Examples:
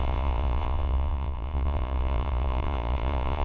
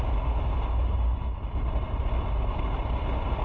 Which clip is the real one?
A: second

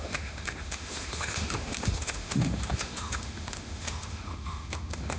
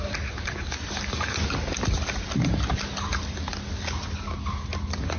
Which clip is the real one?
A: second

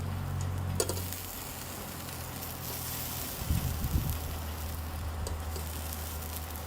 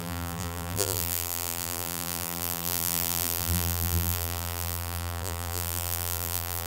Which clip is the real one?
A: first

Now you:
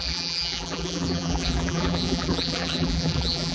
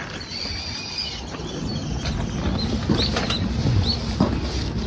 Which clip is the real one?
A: second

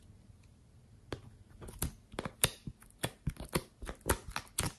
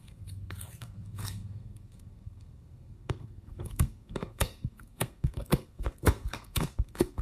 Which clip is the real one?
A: first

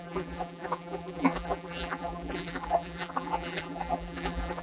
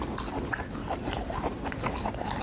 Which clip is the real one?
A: second